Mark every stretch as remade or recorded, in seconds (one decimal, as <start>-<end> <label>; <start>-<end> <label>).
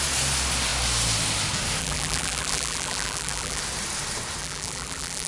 0.0-1.8 recorded; 1.8-3.6 remade; 3.6-4.4 recorded; 4.4-5.3 remade